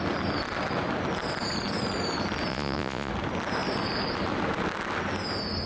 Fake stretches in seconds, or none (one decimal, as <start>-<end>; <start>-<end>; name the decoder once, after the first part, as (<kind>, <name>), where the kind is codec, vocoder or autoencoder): 2.5-3.1 (vocoder, Vocos)